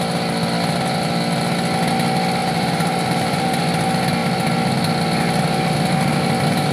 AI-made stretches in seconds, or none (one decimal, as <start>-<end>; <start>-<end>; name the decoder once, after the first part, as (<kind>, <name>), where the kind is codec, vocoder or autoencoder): 2.4-3.6 (vocoder, BigVGAN v2)